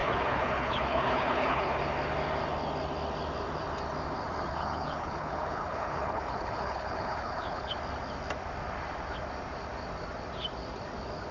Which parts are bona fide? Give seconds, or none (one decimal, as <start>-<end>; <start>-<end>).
1.8-4.5; 7.7-11.3